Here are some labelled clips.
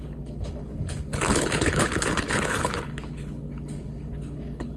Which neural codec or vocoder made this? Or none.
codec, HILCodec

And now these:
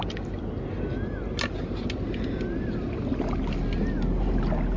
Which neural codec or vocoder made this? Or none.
none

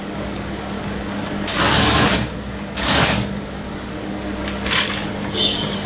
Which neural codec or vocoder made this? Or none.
codec, DAC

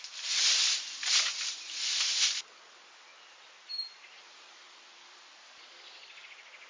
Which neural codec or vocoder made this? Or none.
none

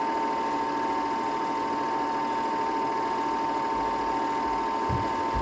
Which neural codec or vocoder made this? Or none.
none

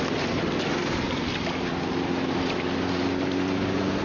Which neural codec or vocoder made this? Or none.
none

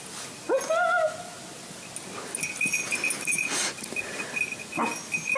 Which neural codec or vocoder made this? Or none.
none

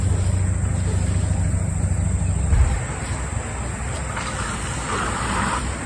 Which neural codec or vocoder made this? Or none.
none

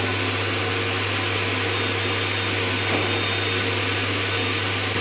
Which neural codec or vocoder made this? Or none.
none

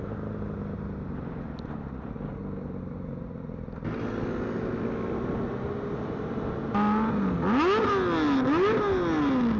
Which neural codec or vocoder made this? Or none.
none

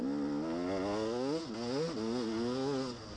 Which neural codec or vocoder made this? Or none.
none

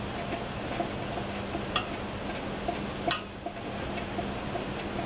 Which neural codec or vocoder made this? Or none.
none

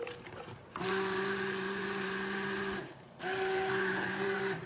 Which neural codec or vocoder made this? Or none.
vocoder, BigVGAN v2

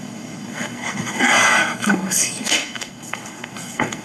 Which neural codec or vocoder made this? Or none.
codec, SNAC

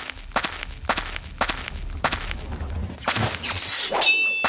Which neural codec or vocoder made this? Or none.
none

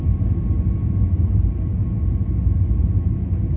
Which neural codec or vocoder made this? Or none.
none